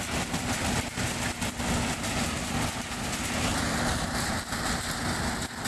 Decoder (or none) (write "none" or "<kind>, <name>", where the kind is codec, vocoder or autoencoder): none